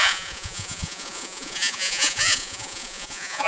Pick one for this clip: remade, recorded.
remade